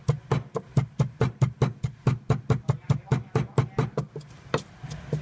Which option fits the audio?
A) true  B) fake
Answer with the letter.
A